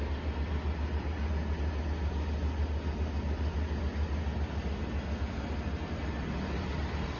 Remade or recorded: recorded